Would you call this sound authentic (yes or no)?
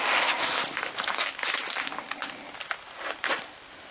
yes